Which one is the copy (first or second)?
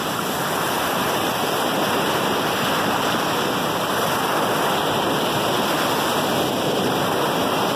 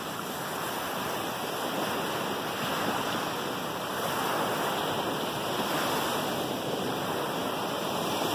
first